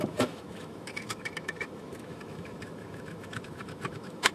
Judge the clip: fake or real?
fake